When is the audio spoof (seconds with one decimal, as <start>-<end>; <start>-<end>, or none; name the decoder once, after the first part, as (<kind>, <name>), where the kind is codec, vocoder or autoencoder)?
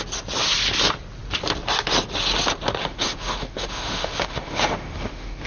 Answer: 2.8-5.5 (autoencoder, DAC-VAE)